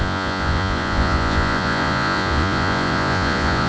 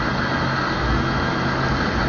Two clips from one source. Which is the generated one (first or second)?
first